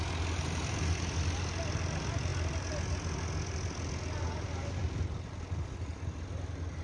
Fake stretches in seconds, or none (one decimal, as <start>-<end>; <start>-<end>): none